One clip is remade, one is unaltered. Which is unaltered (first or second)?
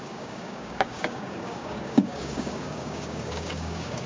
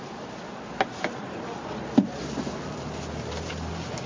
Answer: second